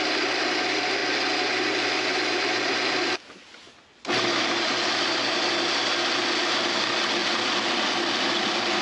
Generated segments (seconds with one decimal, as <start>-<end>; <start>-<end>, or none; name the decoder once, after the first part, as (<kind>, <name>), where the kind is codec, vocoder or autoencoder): none